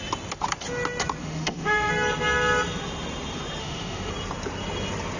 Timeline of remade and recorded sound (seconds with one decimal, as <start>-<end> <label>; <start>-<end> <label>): 0.0-1.2 recorded; 1.2-1.9 remade; 1.9-3.6 recorded; 3.6-4.1 remade; 4.1-5.2 recorded